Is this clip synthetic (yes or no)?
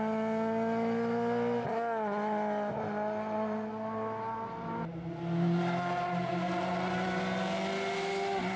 no